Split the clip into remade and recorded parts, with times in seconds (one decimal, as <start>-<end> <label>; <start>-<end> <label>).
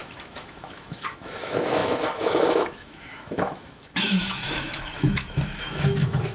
0.0-6.3 remade